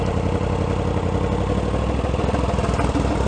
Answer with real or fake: real